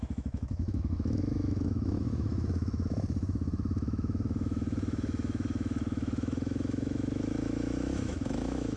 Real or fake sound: fake